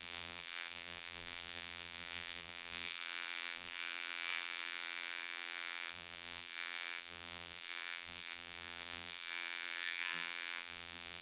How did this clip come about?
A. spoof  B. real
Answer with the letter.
A